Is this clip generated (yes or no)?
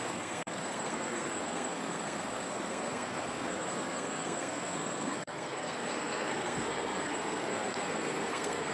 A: yes